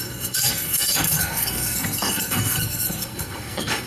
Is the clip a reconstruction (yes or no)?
yes